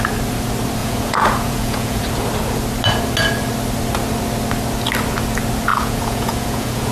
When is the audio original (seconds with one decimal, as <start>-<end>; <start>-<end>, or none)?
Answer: 0.0-0.8; 2.0-5.7